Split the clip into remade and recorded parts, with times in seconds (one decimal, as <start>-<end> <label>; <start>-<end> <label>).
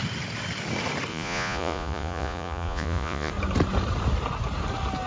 0.0-1.1 recorded; 1.1-3.3 remade; 3.3-5.1 recorded